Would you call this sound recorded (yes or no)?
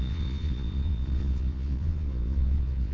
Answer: no